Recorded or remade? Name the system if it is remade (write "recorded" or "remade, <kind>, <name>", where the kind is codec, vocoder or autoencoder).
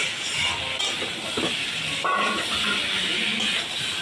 recorded